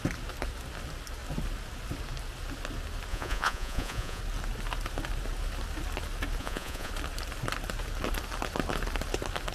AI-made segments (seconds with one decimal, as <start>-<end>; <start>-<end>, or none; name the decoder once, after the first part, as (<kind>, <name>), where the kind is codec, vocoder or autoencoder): 3.1-4.2 (vocoder, Vocos); 6.4-6.9